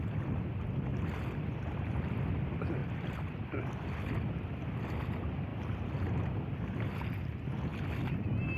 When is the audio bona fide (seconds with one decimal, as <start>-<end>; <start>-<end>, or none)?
0.0-0.9; 2.0-2.8; 3.6-7.7